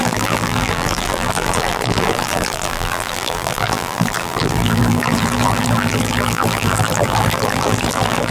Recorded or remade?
remade